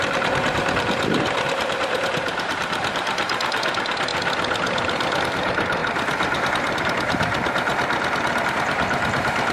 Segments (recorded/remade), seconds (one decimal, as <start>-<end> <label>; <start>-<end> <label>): 0.0-4.1 remade; 4.1-5.2 recorded; 5.2-7.7 remade; 7.7-8.4 recorded; 8.4-9.5 remade